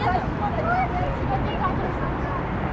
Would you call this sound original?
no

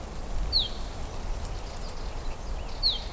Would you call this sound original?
yes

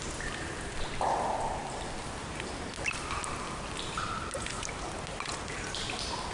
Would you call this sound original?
yes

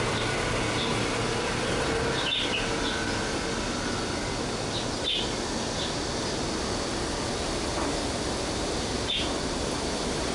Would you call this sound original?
yes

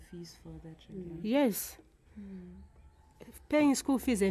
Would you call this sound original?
yes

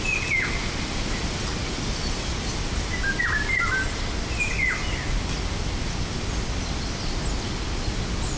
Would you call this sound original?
yes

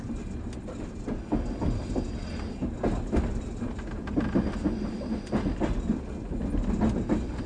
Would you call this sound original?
yes